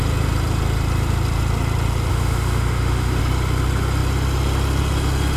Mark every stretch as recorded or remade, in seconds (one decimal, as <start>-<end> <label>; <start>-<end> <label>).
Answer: 0.0-2.1 recorded; 2.1-3.2 remade; 3.2-5.4 recorded